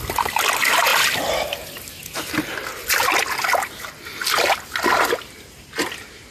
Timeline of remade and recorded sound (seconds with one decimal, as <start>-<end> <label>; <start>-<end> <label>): 0.0-6.3 recorded